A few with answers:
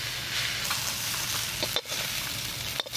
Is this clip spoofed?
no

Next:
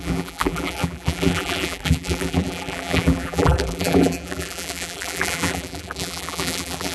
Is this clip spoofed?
yes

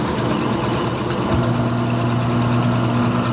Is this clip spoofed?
no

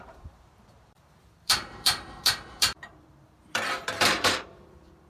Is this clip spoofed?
yes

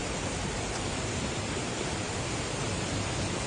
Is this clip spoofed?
yes